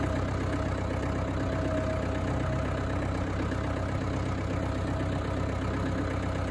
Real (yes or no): yes